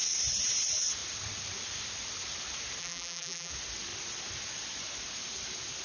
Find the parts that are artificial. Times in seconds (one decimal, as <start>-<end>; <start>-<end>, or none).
2.8-3.5